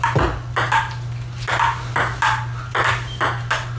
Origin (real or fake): real